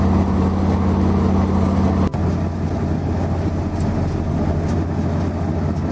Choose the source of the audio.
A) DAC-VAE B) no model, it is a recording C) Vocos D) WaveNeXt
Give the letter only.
B